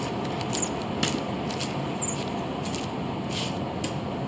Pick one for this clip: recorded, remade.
recorded